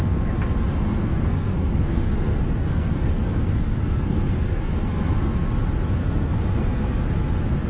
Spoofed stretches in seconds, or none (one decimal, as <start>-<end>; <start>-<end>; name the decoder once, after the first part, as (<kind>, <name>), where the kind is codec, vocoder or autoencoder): 0.7-5.3 (codec, SNAC); 6.0-7.0